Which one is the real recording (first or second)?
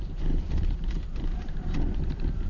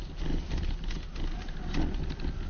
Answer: second